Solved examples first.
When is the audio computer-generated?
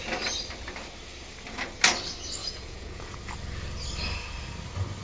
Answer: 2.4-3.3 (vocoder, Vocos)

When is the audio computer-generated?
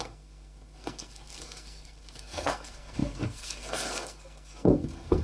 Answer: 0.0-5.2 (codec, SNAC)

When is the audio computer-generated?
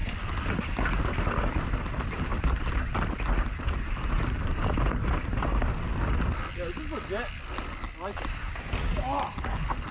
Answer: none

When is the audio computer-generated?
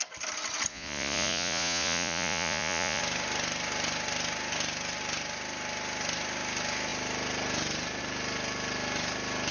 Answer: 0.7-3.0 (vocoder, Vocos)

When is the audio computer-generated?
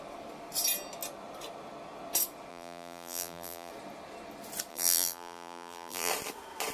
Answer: 2.5-3.7 (vocoder, BigVGAN v2); 4.7-6.1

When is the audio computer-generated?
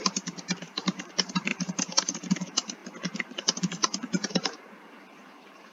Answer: 0.0-2.8 (vocoder, BigVGAN v2); 4.3-5.7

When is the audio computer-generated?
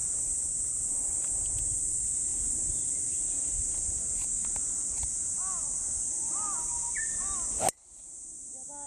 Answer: none